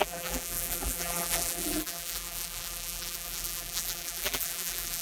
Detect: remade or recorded remade